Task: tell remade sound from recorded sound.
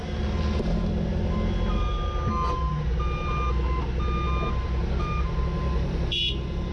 recorded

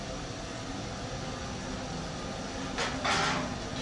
recorded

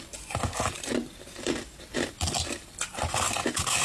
recorded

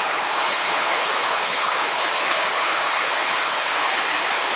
remade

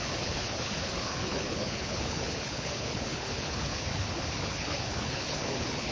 remade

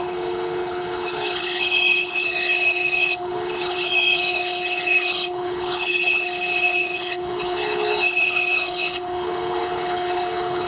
remade